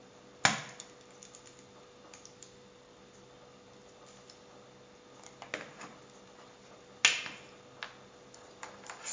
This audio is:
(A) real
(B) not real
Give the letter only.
A